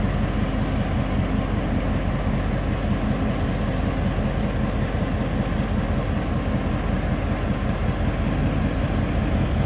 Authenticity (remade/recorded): recorded